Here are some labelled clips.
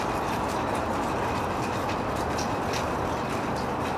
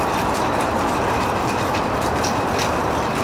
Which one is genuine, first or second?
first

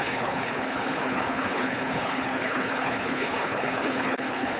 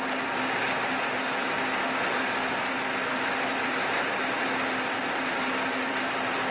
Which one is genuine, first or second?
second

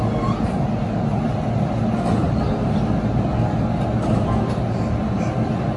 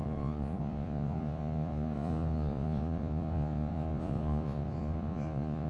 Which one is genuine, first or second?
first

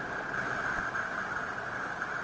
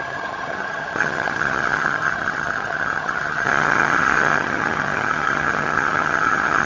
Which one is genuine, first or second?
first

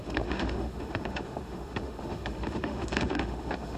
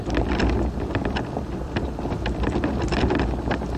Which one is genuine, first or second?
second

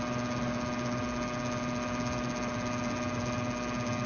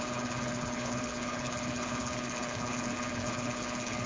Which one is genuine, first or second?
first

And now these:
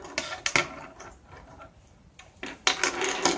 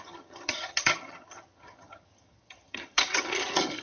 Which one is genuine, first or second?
first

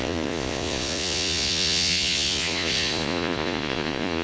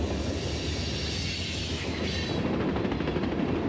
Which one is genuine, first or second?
second